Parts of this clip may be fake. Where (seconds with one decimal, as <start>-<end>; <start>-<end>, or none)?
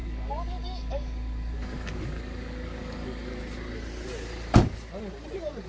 0.0-3.4